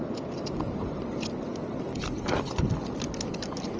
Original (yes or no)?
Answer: yes